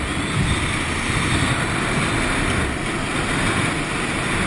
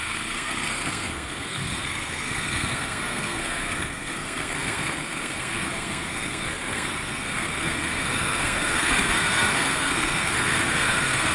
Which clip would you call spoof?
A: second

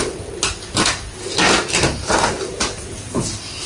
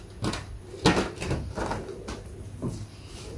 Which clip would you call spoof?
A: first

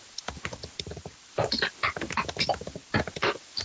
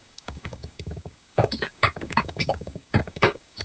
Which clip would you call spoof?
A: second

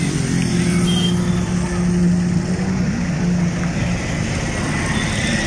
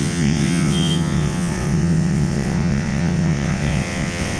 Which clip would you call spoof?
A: second